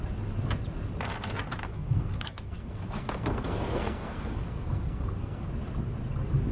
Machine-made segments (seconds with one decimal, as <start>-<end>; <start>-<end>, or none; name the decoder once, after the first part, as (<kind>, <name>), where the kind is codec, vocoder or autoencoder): 1.6-5.5 (codec, SNAC)